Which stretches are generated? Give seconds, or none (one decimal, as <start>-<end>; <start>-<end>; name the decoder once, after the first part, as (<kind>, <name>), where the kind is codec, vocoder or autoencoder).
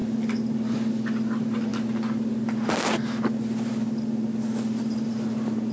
none